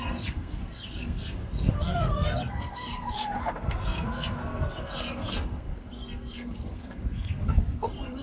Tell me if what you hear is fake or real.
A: fake